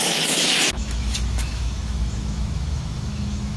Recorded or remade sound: remade